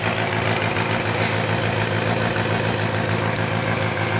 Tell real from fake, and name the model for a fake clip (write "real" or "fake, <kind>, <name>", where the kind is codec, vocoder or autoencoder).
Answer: real